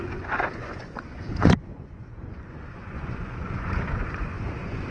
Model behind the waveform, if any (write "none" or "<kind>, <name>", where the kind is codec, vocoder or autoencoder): vocoder, Vocos